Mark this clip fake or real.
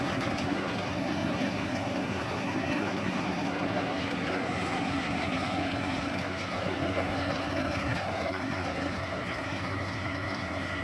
fake